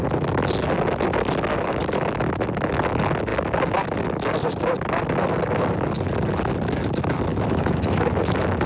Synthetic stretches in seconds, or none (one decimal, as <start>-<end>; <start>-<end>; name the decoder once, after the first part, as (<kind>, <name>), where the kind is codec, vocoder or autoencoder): 7.3-8.1 (autoencoder, DAC-VAE)